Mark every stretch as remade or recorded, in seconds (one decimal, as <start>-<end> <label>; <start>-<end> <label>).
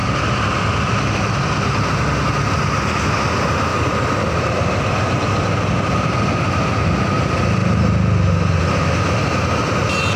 0.0-3.7 recorded; 3.7-5.4 remade; 5.4-10.2 recorded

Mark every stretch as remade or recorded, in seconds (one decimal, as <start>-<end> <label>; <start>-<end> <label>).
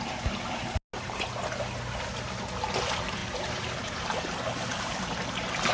0.0-3.2 recorded; 3.2-4.4 remade; 4.4-5.7 recorded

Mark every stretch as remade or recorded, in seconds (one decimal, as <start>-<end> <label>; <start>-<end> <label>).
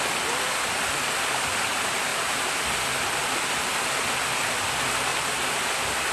0.0-2.1 recorded; 2.1-2.6 remade; 2.6-3.2 recorded; 3.2-3.8 remade; 3.8-5.1 recorded; 5.1-6.1 remade